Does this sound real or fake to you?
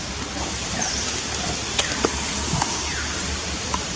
real